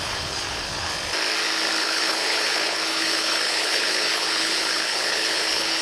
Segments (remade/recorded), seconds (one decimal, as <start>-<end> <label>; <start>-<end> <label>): 0.0-0.9 remade; 0.9-1.8 recorded; 1.8-5.8 remade